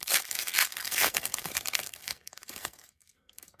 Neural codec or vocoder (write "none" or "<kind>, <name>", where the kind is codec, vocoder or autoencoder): codec, SNAC